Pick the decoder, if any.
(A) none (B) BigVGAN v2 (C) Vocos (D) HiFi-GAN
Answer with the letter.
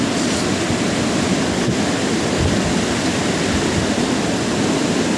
A